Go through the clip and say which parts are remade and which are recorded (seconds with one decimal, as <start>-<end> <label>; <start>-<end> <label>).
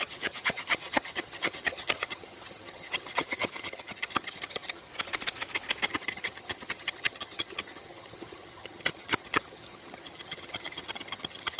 0.0-4.9 remade; 4.9-5.9 recorded; 5.9-11.6 remade